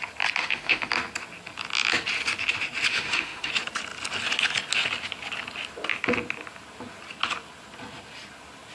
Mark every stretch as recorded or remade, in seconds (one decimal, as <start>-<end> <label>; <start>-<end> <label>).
0.0-0.4 recorded; 0.4-0.9 remade; 0.9-2.9 recorded; 2.9-3.5 remade; 3.5-8.7 recorded

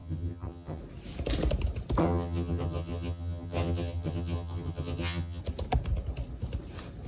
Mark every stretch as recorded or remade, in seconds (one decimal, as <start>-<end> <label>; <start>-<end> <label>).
0.0-0.8 remade; 0.8-2.0 recorded; 2.0-5.4 remade; 5.4-7.1 recorded

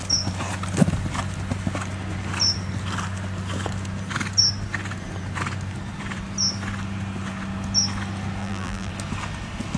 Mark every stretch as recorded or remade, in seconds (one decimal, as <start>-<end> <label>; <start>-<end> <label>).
0.0-8.4 recorded; 8.4-8.9 remade; 8.9-9.8 recorded

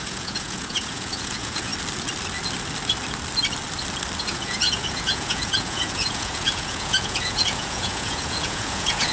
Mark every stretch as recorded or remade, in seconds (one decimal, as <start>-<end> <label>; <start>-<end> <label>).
0.0-1.7 remade; 1.7-4.2 recorded; 4.2-9.1 remade

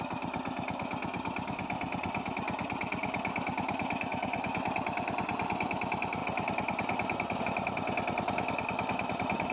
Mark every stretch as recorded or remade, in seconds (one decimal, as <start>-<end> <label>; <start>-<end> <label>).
0.0-9.5 recorded

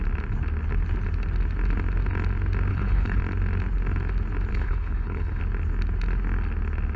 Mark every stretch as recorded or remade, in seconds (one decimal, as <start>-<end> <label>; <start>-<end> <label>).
0.0-2.7 recorded; 2.7-3.2 remade; 3.2-4.5 recorded; 4.5-5.4 remade; 5.4-7.0 recorded

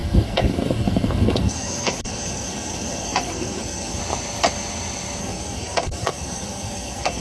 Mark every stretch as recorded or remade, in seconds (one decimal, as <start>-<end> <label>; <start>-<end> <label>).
0.0-4.0 remade; 4.0-5.2 recorded; 5.2-7.2 remade